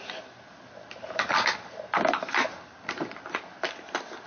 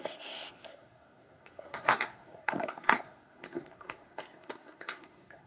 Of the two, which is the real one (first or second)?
first